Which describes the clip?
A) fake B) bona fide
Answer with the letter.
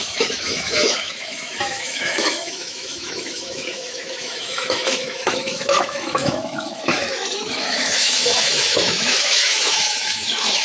A